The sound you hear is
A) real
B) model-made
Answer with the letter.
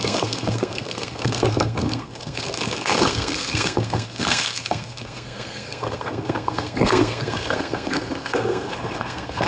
B